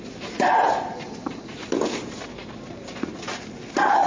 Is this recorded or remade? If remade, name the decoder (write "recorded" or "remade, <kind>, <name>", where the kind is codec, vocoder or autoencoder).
recorded